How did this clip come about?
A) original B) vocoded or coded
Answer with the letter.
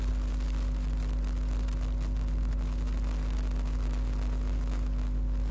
A